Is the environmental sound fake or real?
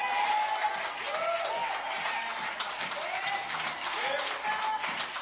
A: real